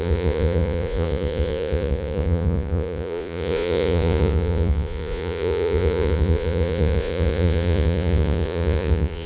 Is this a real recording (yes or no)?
no